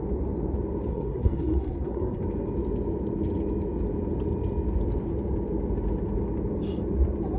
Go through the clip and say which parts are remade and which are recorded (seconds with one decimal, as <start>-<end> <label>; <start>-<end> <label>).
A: 0.0-0.9 recorded; 0.9-2.2 remade; 2.2-7.4 recorded

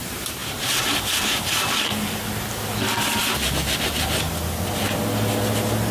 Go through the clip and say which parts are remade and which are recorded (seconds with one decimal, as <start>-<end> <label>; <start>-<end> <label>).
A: 0.0-5.9 recorded

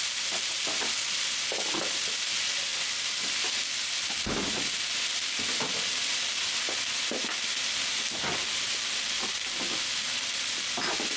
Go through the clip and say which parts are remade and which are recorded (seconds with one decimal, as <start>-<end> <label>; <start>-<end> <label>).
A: 0.0-11.2 recorded

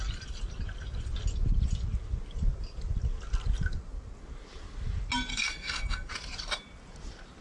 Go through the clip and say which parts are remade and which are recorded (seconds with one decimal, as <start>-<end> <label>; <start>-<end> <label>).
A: 0.0-5.3 recorded; 5.3-6.1 remade; 6.1-7.4 recorded

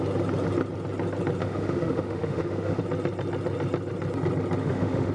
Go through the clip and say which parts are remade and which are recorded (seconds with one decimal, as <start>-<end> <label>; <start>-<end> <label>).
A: 0.0-1.4 recorded; 1.4-2.8 remade; 2.8-4.6 recorded; 4.6-5.1 remade